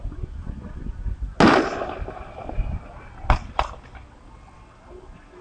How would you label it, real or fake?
real